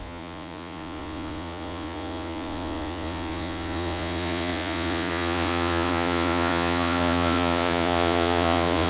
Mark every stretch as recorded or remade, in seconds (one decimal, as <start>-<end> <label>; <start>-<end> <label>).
0.0-8.9 remade